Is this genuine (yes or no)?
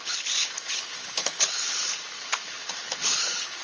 no